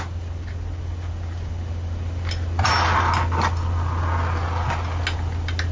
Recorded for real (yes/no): yes